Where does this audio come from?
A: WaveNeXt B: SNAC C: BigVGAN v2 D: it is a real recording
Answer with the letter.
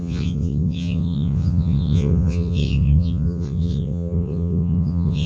A